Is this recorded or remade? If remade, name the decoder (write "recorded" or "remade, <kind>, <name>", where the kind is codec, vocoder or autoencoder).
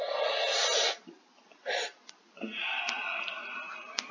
recorded